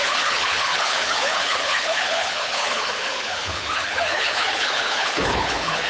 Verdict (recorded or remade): remade